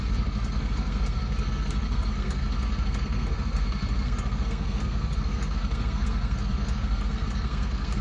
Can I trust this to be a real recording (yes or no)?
no